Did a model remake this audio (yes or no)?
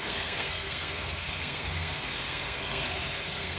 yes